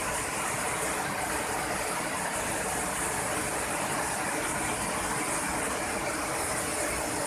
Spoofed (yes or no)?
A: no